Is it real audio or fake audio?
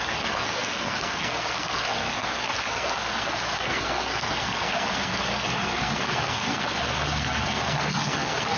fake